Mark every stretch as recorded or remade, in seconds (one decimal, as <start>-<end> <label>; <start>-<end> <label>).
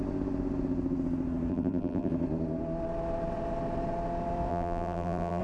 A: 0.0-1.5 recorded; 1.5-2.1 remade; 2.1-4.5 recorded; 4.5-5.4 remade